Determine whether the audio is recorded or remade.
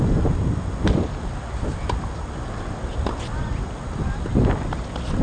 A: recorded